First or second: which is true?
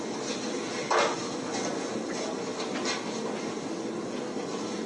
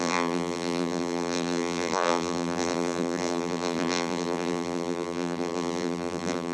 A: first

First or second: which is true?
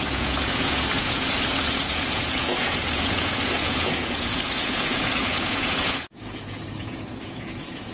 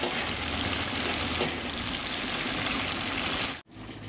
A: second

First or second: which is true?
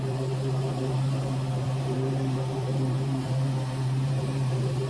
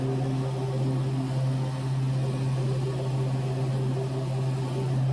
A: second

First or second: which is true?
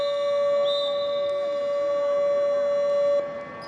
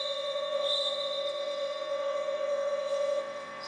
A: first